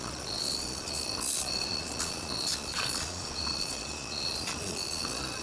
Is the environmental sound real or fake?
fake